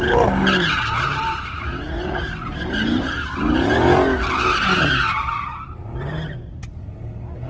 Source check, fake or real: real